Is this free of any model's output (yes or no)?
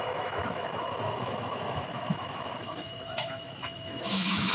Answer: no